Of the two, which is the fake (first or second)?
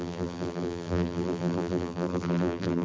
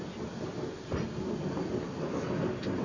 first